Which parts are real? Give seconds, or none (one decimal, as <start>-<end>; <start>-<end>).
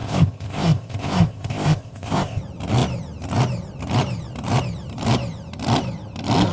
2.4-6.5